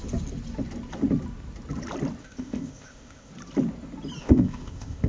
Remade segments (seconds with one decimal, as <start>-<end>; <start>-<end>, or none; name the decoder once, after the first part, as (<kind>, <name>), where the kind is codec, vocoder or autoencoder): 2.2-3.3 (codec, ZipCodec); 4.2-5.1